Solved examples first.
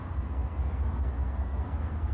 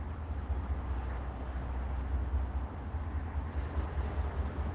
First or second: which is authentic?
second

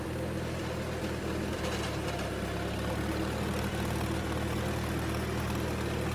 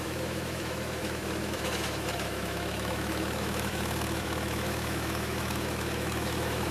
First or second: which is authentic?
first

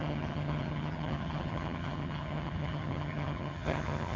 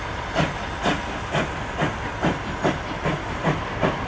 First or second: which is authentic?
second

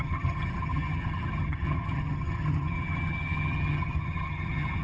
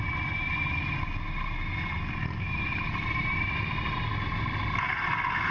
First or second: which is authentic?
second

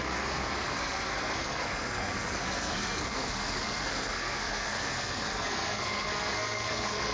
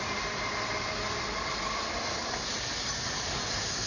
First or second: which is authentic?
second